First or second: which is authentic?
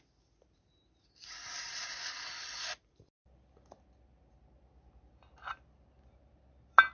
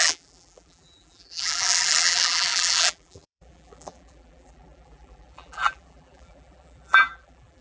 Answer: first